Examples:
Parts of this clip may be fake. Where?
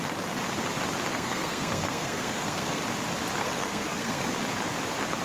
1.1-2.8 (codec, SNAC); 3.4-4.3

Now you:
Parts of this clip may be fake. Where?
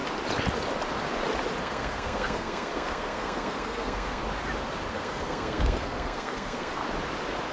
1.6-4.2 (codec, SNAC); 4.9-6.8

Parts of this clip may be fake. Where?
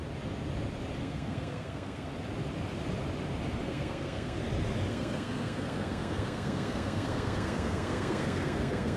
1.0-2.1 (codec, SNAC); 3.6-4.4; 4.9-9.0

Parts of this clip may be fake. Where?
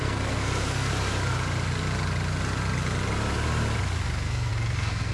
0.0-0.9 (codec, SNAC); 4.0-5.1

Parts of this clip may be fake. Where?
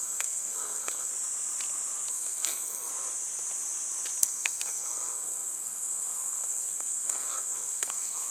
0.0-1.1 (codec, SNAC); 2.1-2.9; 4.2-8.3